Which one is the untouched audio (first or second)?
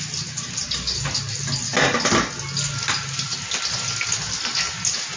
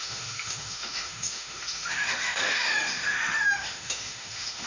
first